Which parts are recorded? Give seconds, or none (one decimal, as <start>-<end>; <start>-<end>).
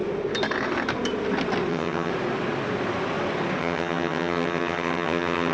0.0-1.7; 2.1-3.6